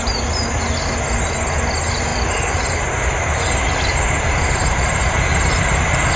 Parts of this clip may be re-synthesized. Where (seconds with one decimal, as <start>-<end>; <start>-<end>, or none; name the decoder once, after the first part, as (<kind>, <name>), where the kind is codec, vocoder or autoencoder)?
2.1-5.8 (vocoder, BigVGAN v2)